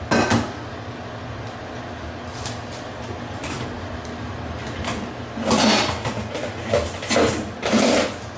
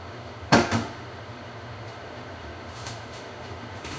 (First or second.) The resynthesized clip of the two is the second